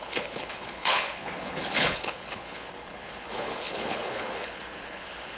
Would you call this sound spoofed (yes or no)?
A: yes